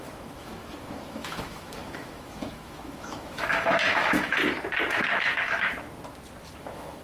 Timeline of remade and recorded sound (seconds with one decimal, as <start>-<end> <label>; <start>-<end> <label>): 0.0-4.4 remade; 4.4-4.9 recorded; 4.9-5.7 remade; 5.7-6.6 recorded; 6.6-7.0 remade